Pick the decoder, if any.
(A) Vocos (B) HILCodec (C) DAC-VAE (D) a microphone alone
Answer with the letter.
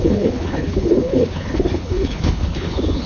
B